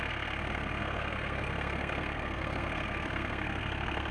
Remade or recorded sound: remade